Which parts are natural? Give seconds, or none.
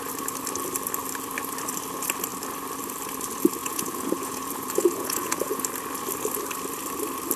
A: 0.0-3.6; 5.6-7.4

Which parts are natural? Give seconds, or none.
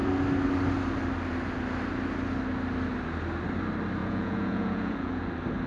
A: 0.0-4.0; 5.2-5.7